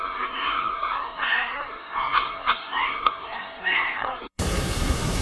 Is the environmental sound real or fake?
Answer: fake